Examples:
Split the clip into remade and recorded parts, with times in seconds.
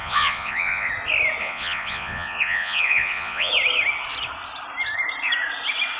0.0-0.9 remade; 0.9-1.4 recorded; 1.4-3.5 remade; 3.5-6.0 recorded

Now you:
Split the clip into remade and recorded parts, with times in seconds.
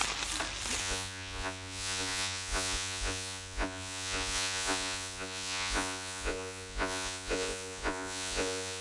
0.0-0.8 recorded; 0.8-8.8 remade